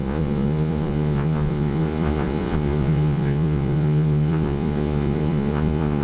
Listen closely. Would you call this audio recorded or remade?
remade